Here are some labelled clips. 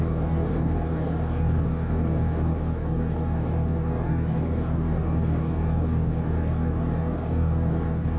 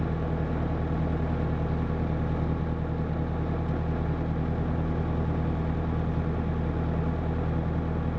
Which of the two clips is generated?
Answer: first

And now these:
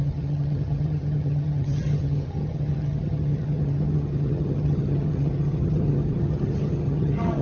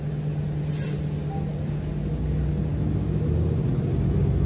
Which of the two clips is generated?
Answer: first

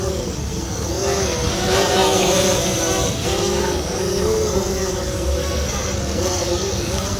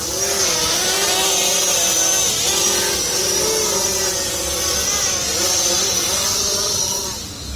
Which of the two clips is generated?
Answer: first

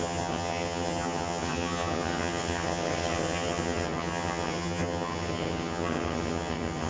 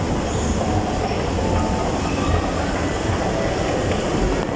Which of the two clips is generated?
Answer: first